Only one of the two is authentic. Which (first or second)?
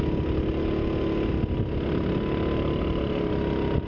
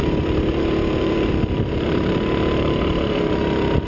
first